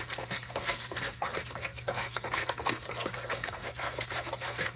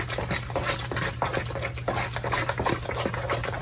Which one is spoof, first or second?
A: first